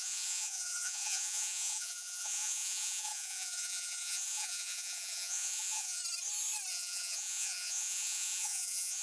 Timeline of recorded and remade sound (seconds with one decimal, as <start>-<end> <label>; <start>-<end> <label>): 0.0-6.0 remade; 6.0-6.7 recorded; 6.7-9.0 remade